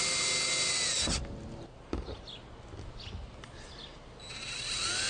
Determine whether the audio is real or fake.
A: real